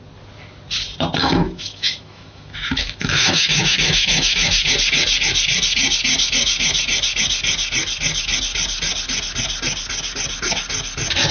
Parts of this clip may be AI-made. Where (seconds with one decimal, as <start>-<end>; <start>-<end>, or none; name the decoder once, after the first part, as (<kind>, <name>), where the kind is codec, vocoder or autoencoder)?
1.2-4.7 (autoencoder, DAC-VAE)

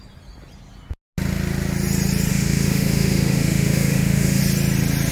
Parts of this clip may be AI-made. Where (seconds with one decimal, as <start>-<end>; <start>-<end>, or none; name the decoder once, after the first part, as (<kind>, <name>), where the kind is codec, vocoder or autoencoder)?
2.3-4.4 (autoencoder, DAC-VAE)

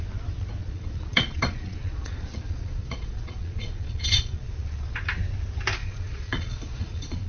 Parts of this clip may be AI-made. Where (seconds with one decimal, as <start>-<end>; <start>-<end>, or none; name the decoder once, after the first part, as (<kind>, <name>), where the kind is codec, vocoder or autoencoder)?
0.6-5.0 (vocoder, Vocos); 5.8-7.3

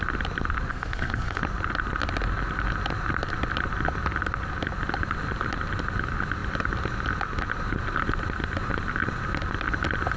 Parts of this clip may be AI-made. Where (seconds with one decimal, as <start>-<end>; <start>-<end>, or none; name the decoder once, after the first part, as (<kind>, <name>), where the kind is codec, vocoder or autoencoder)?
0.7-1.4 (codec, SNAC)